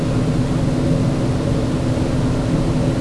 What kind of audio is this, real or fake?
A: real